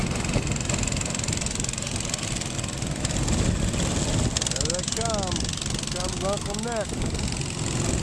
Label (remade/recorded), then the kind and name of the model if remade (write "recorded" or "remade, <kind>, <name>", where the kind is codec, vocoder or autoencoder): recorded